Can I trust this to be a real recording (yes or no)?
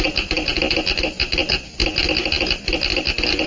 yes